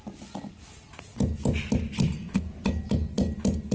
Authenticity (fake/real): real